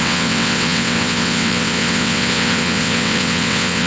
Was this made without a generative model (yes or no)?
no